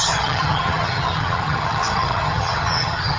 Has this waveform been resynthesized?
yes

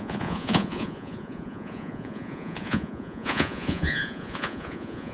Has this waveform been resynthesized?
yes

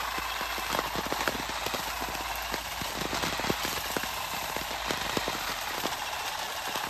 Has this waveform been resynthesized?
no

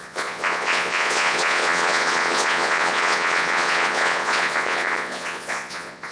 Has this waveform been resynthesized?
yes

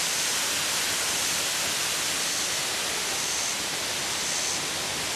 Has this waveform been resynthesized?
no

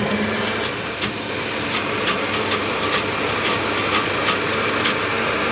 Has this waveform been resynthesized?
no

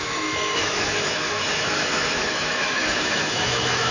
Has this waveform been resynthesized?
yes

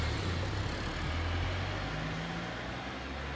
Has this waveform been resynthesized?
no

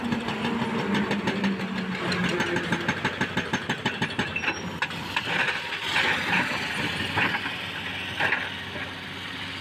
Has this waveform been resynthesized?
no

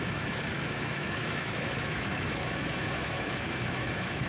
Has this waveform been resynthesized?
yes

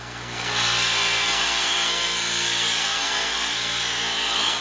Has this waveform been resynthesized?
yes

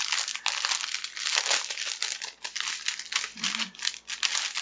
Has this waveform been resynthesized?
no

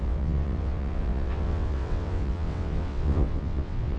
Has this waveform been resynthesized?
yes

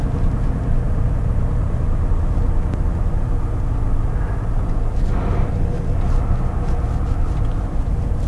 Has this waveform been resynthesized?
no